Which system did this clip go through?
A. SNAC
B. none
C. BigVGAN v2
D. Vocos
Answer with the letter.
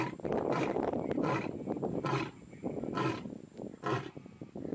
B